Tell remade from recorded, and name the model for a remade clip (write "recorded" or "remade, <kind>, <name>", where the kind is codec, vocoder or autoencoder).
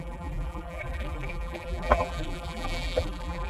remade, vocoder, BigVGAN v2